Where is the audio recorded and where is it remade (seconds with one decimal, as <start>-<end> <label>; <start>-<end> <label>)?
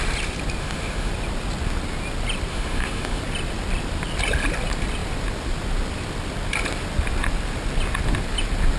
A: 0.0-0.6 recorded; 0.6-1.1 remade; 1.1-2.5 recorded; 2.5-3.2 remade; 3.2-8.8 recorded